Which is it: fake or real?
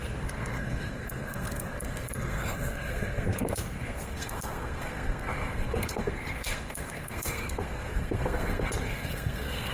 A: fake